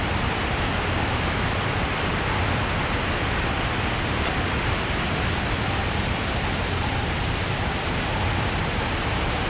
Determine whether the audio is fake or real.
real